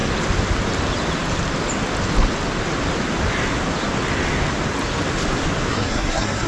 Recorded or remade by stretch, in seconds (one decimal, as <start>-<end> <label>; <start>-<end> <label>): 0.0-5.7 recorded; 5.7-6.5 remade